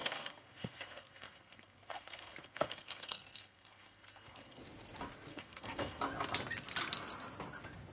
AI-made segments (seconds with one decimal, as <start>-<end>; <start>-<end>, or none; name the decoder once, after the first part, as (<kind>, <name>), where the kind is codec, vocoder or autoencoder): 0.0-4.6 (codec, SNAC); 5.3-6.0